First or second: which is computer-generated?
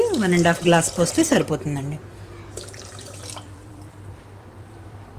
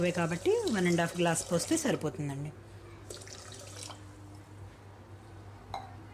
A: first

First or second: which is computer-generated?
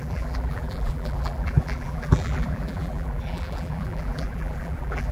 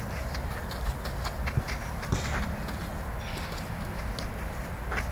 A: first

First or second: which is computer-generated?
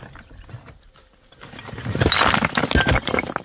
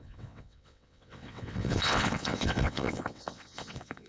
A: second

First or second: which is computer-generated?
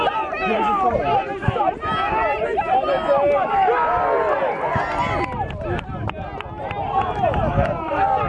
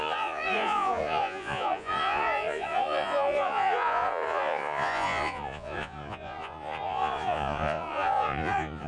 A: second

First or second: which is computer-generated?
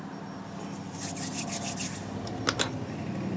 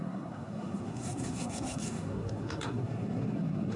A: second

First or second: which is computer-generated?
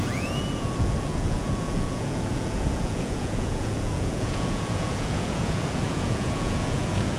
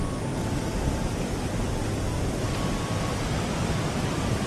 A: first